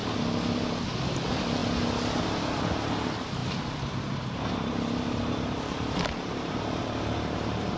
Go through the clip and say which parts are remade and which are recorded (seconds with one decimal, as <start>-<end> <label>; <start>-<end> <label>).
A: 0.0-3.4 recorded; 3.4-7.8 remade